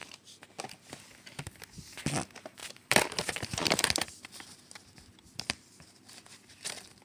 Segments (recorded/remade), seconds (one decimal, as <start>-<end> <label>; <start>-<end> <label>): 0.0-2.6 recorded; 2.6-7.0 remade